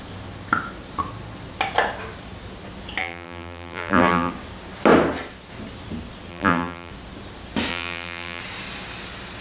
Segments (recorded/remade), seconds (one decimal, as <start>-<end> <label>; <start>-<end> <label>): 0.0-3.0 recorded; 3.0-4.3 remade; 4.3-6.3 recorded; 6.3-6.9 remade; 6.9-7.7 recorded; 7.7-8.4 remade; 8.4-9.4 recorded